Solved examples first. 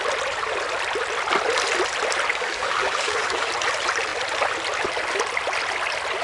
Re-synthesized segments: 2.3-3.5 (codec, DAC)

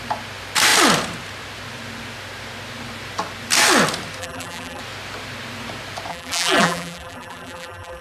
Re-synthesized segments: 4.2-4.8 (vocoder, BigVGAN v2); 6.1-8.0

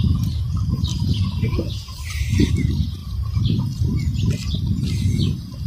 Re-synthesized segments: 0.9-2.5 (vocoder, BigVGAN v2); 3.0-3.6

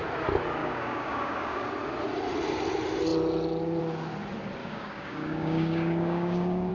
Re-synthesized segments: 0.6-1.7 (codec, DAC); 4.6-6.7